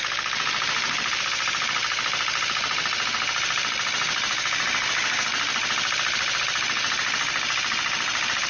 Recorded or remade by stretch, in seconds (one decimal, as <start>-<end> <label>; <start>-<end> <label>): 0.0-8.5 recorded